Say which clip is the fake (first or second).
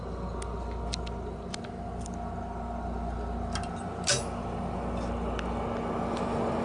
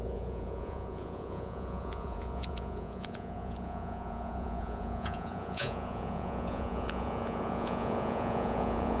second